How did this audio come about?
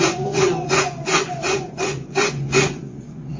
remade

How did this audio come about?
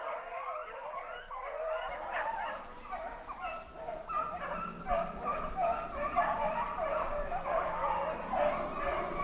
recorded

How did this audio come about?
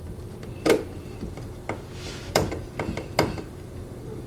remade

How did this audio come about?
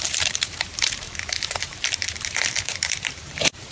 remade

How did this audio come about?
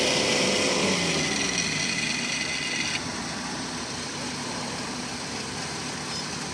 recorded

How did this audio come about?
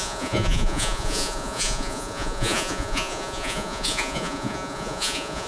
remade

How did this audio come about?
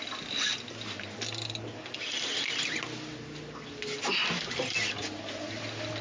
recorded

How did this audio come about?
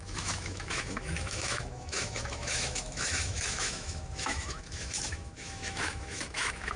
remade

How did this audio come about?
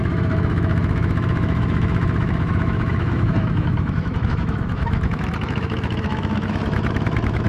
remade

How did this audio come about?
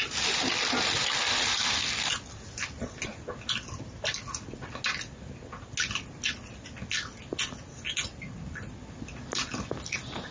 recorded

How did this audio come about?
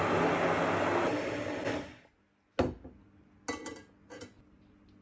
recorded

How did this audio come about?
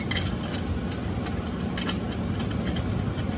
recorded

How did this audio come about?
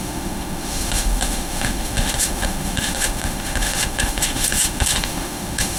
remade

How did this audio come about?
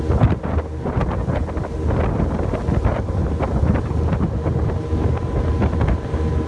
recorded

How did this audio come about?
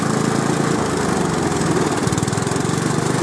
recorded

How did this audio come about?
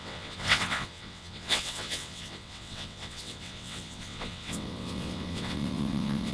remade